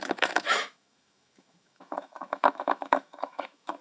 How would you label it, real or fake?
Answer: fake